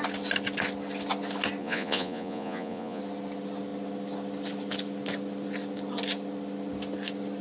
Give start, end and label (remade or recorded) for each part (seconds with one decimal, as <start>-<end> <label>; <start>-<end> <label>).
0.0-1.6 recorded; 1.6-3.0 remade; 3.0-7.4 recorded